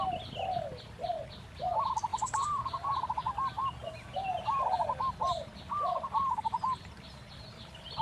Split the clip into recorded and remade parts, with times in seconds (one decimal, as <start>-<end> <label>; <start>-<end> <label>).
0.0-2.1 recorded; 2.1-2.9 remade; 2.9-8.0 recorded